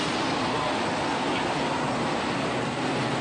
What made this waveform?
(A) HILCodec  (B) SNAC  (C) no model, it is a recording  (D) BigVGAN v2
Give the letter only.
C